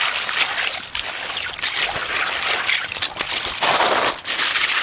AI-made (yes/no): yes